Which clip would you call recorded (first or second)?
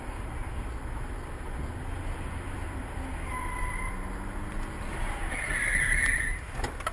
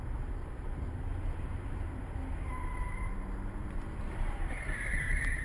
first